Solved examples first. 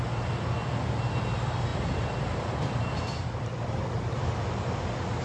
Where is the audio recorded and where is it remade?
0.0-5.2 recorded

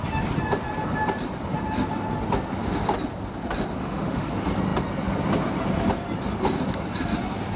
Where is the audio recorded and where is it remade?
0.0-3.8 recorded; 3.8-4.3 remade; 4.3-7.6 recorded

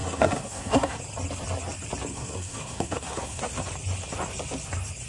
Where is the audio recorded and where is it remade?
0.0-1.0 remade; 1.0-2.1 recorded; 2.1-3.4 remade; 3.4-5.1 recorded

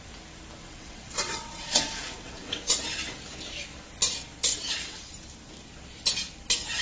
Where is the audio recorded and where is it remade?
0.0-0.6 recorded; 0.6-2.8 remade; 2.8-4.5 recorded; 4.5-5.1 remade; 5.1-6.8 recorded

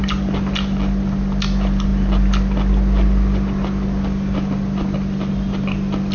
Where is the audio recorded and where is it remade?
0.0-6.1 recorded

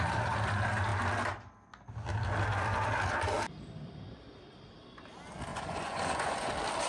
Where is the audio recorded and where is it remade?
0.0-5.5 recorded; 5.5-6.5 remade; 6.5-6.9 recorded

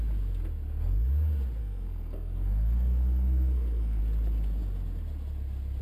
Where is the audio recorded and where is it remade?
0.0-1.6 recorded; 1.6-4.0 remade; 4.0-5.8 recorded

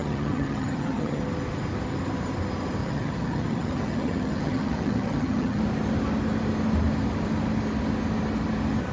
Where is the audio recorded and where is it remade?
0.0-1.2 remade; 1.2-2.8 recorded; 2.8-5.6 remade; 5.6-8.9 recorded